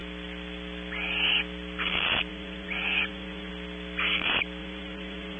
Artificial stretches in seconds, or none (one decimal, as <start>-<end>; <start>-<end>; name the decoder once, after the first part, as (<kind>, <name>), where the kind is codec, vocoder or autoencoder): 2.3-3.5 (vocoder, Vocos); 4.6-5.4